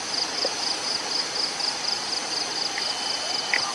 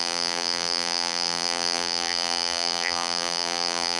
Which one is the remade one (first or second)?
second